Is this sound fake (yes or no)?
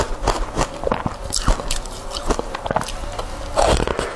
no